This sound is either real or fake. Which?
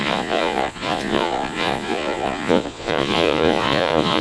fake